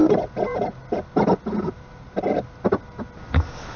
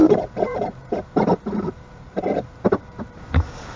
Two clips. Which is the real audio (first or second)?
first